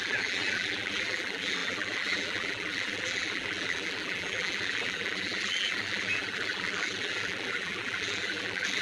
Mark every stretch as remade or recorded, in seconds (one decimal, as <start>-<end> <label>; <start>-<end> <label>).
0.0-8.8 remade